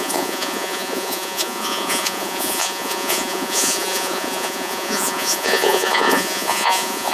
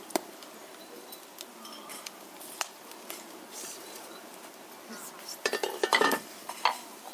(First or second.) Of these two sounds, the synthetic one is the first